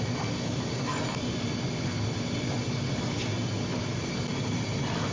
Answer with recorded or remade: recorded